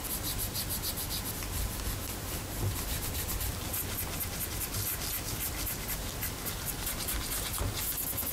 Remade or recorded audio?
recorded